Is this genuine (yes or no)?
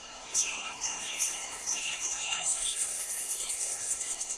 no